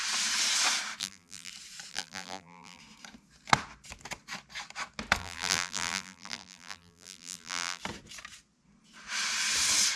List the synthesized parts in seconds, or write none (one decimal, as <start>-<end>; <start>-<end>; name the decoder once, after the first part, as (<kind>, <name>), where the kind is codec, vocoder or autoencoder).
1.0-1.5 (vocoder, BigVGAN v2); 1.9-2.8; 5.2-7.8